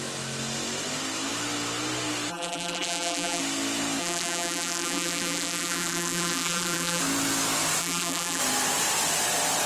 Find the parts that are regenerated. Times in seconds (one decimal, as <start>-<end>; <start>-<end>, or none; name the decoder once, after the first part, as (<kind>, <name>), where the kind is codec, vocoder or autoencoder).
2.3-3.4 (vocoder, BigVGAN v2); 4.0-7.0; 7.8-8.4